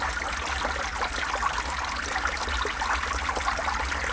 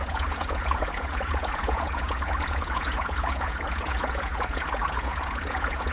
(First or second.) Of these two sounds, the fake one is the second